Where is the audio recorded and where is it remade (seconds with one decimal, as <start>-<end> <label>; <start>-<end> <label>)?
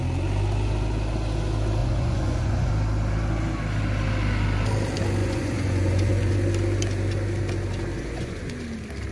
0.0-1.8 recorded; 1.8-2.7 remade; 2.7-5.2 recorded; 5.2-6.3 remade; 6.3-8.0 recorded; 8.0-8.6 remade; 8.6-9.1 recorded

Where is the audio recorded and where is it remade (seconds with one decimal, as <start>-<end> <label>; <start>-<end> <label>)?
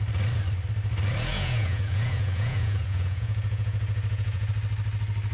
0.0-1.3 recorded; 1.3-4.5 remade; 4.5-5.3 recorded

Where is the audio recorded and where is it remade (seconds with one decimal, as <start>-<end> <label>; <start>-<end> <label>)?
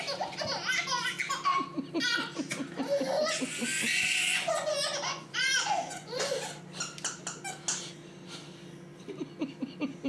0.0-2.9 recorded; 2.9-6.3 remade; 6.3-10.1 recorded